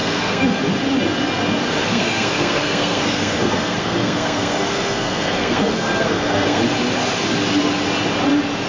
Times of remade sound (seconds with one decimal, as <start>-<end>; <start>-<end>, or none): 0.0-0.6; 1.8-6.6